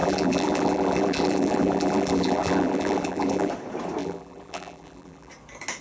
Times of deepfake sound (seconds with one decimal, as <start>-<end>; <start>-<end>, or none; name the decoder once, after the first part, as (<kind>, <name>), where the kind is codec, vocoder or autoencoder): 0.0-3.5 (vocoder, BigVGAN v2); 4.0-5.3